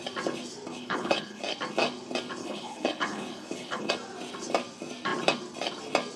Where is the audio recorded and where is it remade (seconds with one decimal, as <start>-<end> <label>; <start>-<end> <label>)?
0.0-0.7 recorded; 0.7-1.4 remade; 1.4-2.4 recorded; 2.4-3.9 remade; 3.9-6.2 recorded